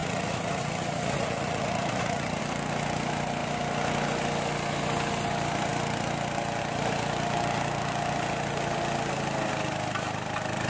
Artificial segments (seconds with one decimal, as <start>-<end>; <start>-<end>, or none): 0.0-2.4